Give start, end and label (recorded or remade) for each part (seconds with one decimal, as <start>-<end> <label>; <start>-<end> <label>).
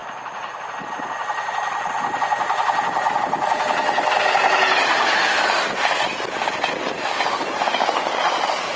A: 0.0-8.0 recorded; 8.0-8.8 remade